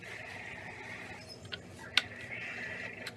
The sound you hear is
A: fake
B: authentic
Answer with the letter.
B